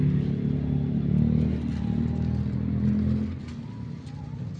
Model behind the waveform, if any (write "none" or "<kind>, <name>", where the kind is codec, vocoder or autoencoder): none